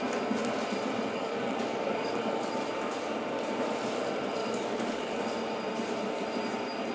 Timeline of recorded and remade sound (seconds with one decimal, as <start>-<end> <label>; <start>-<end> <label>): 0.0-1.1 recorded; 1.1-2.5 remade; 2.5-4.4 recorded; 4.4-5.2 remade; 5.2-6.9 recorded